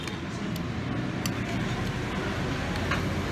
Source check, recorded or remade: recorded